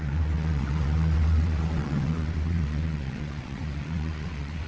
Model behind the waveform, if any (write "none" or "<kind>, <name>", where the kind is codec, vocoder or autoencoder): vocoder, WaveNeXt